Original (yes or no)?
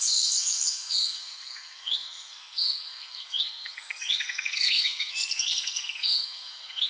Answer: no